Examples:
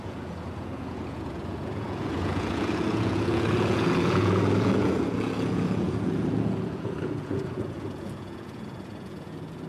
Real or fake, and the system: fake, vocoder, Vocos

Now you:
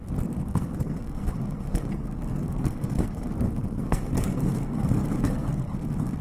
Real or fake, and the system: fake, codec, SNAC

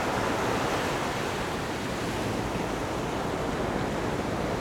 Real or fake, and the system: fake, vocoder, BigVGAN v2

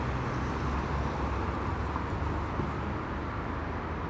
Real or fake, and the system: real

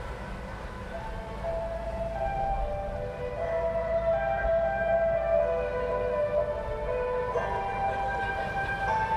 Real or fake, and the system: real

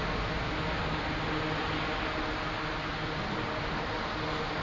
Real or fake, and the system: real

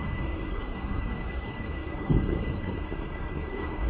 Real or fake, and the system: fake, codec, SNAC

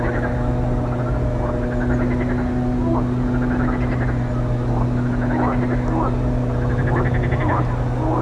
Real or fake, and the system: real